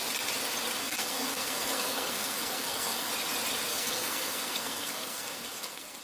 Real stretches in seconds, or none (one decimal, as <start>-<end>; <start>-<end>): 0.0-0.8; 3.1-3.7